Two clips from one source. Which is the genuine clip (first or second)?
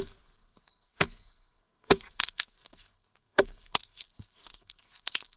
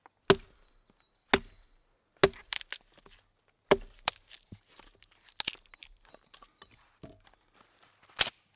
second